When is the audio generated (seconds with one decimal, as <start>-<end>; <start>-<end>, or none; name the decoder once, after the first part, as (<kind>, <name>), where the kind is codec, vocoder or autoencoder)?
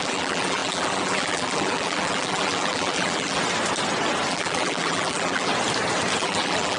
0.0-3.4 (vocoder, BigVGAN v2); 4.3-5.5; 6.2-6.8